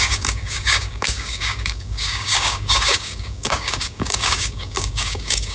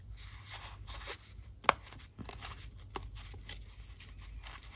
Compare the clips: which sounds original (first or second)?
second